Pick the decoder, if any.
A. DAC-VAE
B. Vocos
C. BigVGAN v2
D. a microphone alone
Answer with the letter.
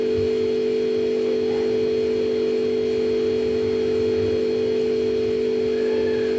D